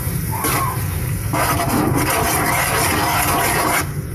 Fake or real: fake